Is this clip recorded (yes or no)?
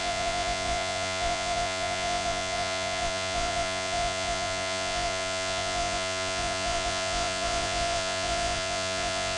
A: no